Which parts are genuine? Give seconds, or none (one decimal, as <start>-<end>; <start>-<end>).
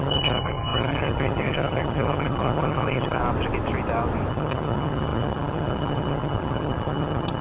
3.2-4.3